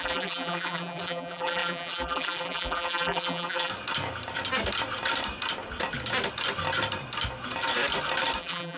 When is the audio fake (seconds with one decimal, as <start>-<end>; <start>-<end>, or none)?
0.0-3.7; 8.4-8.8